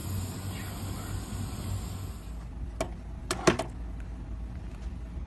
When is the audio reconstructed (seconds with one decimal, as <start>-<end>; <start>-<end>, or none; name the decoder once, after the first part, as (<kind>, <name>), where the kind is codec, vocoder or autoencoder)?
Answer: none